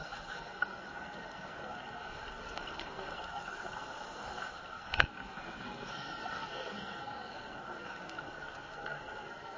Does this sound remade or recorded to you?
remade